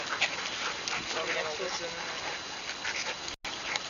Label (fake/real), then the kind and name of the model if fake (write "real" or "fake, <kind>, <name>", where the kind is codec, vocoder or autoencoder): real